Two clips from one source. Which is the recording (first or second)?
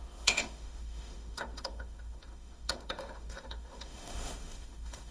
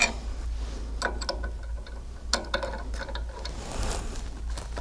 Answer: second